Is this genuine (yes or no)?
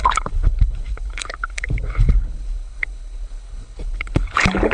no